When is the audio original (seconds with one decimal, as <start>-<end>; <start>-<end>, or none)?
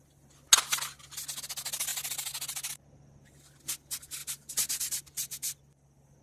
0.0-4.2; 5.6-6.2